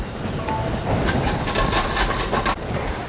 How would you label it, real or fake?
real